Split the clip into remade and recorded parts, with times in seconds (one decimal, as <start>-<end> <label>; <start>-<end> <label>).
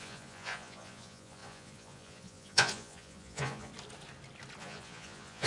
0.0-3.7 remade; 3.7-4.6 recorded; 4.6-5.5 remade